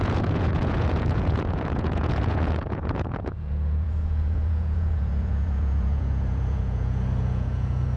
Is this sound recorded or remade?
remade